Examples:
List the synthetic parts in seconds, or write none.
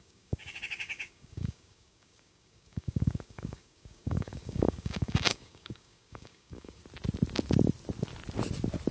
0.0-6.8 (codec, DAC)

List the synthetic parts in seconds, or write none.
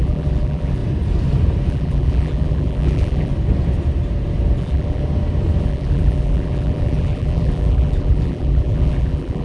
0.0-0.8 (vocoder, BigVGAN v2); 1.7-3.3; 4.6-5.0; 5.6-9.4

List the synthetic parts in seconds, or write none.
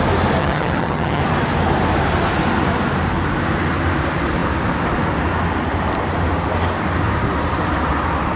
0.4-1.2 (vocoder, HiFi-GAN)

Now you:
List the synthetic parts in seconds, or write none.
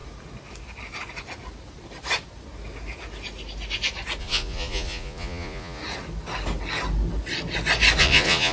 4.2-5.8 (vocoder, Vocos); 8.0-8.5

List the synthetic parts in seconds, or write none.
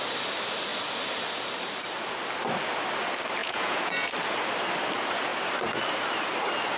3.4-4.1 (vocoder, Vocos)